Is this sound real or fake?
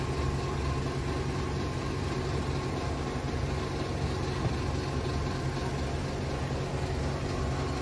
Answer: real